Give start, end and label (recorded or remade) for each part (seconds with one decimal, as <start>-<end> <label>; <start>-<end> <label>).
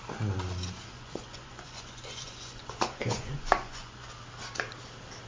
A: 0.0-0.9 recorded; 0.9-4.1 remade; 4.1-5.3 recorded